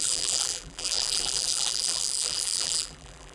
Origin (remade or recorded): remade